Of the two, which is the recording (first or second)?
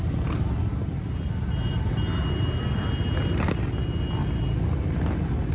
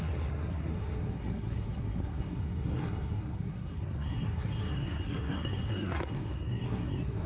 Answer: first